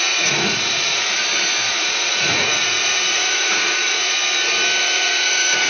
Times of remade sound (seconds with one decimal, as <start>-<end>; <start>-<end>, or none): 0.0-1.2; 1.7-4.2; 4.8-5.7